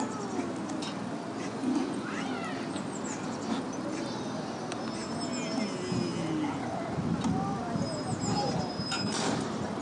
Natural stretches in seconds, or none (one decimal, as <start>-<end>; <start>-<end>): 0.0-1.4; 2.1-9.8